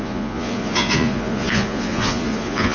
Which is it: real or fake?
fake